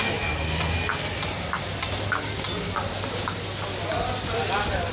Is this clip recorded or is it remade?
recorded